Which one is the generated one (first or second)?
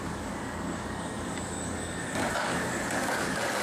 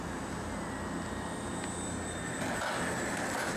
first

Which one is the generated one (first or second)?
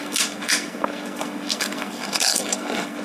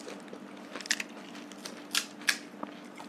first